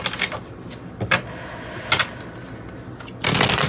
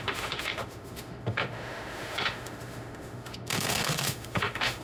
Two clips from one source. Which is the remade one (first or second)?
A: second